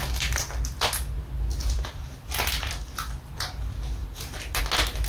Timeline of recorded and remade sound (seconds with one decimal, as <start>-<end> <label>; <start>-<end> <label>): 0.0-1.6 recorded; 1.6-2.7 remade; 2.7-4.0 recorded; 4.0-4.6 remade; 4.6-5.1 recorded